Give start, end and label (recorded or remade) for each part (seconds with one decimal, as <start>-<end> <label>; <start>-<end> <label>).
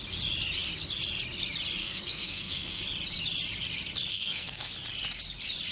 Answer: 0.0-1.8 recorded; 1.8-2.8 remade; 2.8-4.1 recorded; 4.1-4.7 remade; 4.7-5.7 recorded